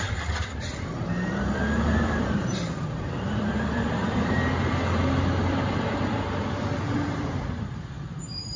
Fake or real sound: fake